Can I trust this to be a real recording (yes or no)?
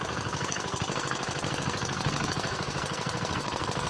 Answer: no